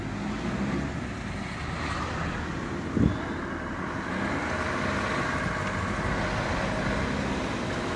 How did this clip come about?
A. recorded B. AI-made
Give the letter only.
A